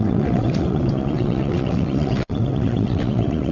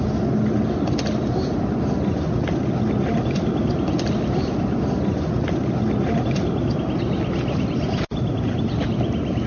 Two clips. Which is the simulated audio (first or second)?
first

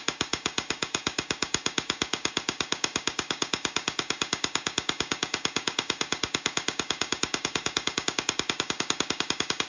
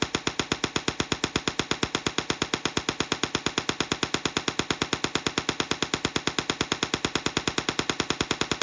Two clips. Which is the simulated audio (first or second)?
first